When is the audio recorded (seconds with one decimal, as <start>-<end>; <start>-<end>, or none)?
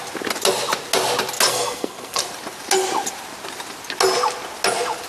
0.0-1.5; 2.2-5.1